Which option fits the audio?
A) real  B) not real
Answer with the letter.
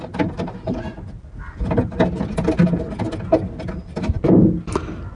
A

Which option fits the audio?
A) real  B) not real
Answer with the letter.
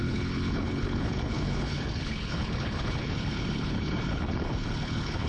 B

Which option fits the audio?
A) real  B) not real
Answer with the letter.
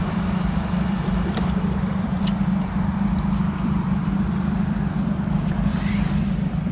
B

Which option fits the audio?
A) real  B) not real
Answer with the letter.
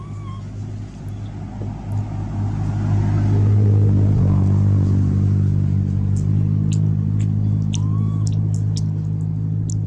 A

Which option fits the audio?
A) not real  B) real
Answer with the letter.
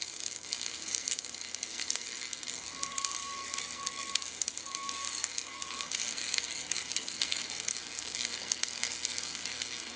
A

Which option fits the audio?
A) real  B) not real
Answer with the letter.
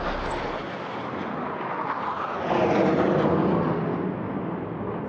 A